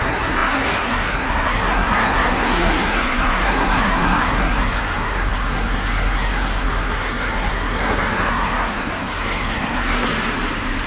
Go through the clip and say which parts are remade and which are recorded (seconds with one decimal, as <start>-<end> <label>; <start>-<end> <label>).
0.0-10.1 remade; 10.1-10.9 recorded